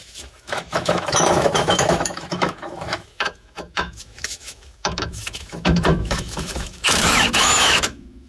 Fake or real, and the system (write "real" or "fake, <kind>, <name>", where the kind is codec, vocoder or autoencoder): fake, autoencoder, DAC-VAE